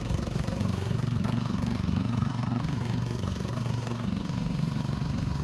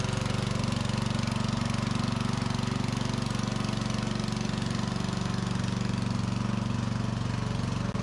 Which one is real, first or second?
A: second